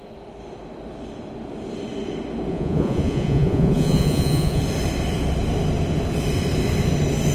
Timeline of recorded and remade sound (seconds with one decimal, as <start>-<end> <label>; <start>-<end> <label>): 0.0-2.5 recorded; 2.5-4.6 remade; 4.6-7.3 recorded